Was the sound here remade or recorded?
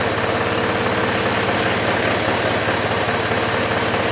recorded